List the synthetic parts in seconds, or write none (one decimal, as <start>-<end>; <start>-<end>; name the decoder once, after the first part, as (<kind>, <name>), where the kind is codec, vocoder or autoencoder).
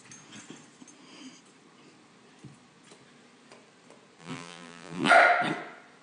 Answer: 4.2-5.1 (vocoder, BigVGAN v2)